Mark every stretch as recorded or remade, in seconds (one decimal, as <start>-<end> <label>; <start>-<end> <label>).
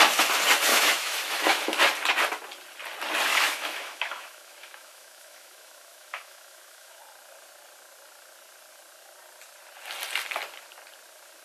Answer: 0.0-0.7 recorded; 0.7-1.8 remade; 1.8-3.3 recorded; 3.3-7.0 remade; 7.0-11.4 recorded